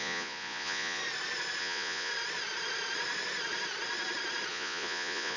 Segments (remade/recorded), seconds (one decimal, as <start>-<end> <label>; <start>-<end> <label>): 0.0-1.0 remade; 1.0-1.6 recorded; 1.6-2.1 remade; 2.1-4.5 recorded; 4.5-5.4 remade

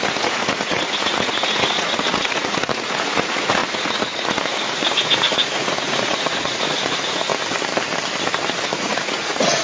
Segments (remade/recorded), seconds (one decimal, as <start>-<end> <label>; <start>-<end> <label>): 0.0-7.3 remade; 7.3-8.7 recorded; 8.7-9.6 remade

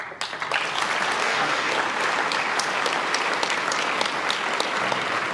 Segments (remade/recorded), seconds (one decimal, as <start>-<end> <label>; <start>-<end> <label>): 0.0-1.2 recorded; 1.2-1.7 remade; 1.7-5.3 recorded

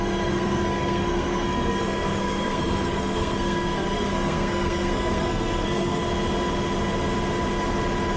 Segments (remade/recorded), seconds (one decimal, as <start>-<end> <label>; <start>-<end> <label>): 0.0-6.0 remade; 6.0-8.2 recorded

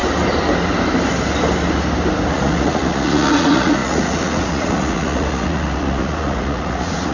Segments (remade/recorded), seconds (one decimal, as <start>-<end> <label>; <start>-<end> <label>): 0.0-2.3 recorded; 2.3-7.1 remade